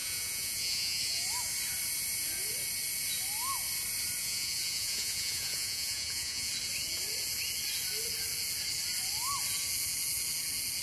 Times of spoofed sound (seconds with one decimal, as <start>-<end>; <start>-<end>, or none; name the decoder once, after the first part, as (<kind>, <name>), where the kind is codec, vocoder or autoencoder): 0.0-1.0 (vocoder, Vocos); 4.2-6.5